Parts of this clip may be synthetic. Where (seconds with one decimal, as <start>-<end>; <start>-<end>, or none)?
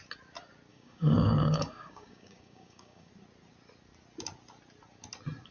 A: 0.7-3.1